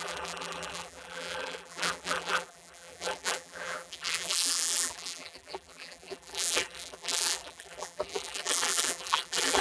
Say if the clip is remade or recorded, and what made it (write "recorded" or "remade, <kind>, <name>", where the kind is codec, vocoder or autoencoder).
remade, vocoder, BigVGAN v2